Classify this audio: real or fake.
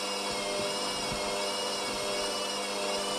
real